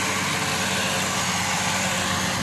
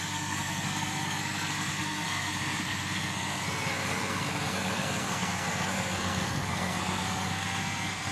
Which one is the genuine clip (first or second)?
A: first